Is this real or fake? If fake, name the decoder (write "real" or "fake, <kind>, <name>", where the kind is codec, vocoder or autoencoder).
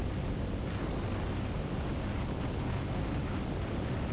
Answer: real